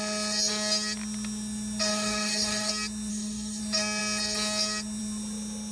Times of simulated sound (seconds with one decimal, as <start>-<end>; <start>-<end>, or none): 1.9-2.7; 3.1-3.6